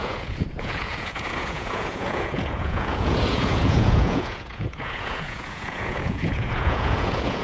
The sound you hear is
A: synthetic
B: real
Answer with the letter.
A